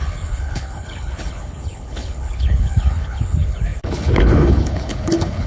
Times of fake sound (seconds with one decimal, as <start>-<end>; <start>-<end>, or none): 0.0-5.5